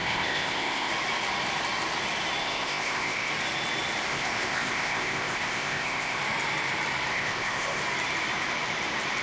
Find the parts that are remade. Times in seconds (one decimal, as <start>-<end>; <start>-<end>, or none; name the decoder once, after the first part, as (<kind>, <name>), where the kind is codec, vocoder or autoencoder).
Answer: 0.0-0.9 (codec, ZipCodec); 2.4-3.3; 4.1-6.2; 7.1-7.8